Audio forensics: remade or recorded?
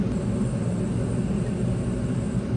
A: recorded